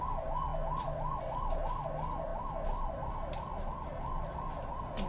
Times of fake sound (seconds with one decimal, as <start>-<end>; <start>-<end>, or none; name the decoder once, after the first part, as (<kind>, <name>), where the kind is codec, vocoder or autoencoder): none